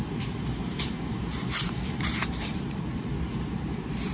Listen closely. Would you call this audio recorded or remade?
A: remade